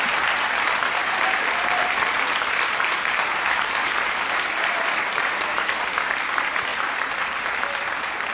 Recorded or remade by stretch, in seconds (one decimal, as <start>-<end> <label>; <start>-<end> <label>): 0.0-1.0 recorded; 1.0-5.9 remade; 5.9-6.7 recorded; 6.7-8.3 remade